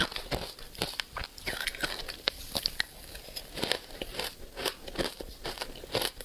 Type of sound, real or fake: fake